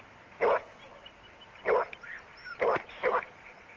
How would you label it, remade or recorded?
recorded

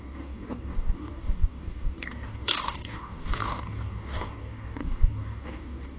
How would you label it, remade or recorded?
remade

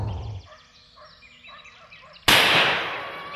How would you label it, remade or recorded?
recorded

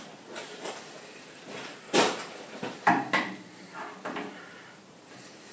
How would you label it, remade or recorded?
recorded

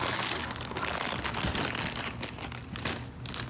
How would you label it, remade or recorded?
recorded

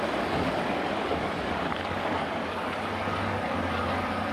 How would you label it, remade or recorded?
remade